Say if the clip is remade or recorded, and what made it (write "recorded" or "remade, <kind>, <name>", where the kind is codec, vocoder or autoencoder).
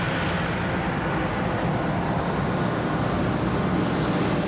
recorded